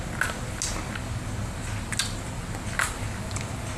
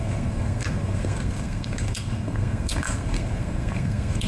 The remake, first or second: second